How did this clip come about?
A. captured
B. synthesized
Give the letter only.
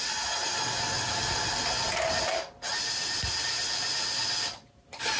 A